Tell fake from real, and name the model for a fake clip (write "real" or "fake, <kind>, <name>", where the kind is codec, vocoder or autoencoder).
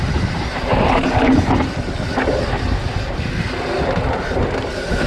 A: real